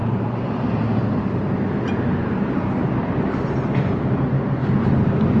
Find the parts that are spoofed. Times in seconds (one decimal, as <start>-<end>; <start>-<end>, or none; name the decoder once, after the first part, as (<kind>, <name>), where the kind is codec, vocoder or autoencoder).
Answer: 0.0-0.5 (vocoder, BigVGAN v2); 4.6-5.4